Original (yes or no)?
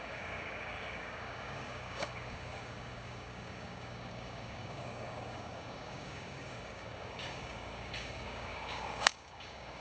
no